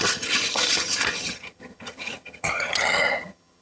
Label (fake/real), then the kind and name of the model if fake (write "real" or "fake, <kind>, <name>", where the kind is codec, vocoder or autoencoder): fake, vocoder, HiFi-GAN